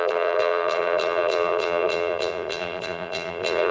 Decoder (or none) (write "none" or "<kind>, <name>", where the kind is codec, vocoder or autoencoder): vocoder, BigVGAN v2